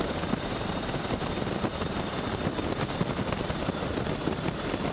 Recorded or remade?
recorded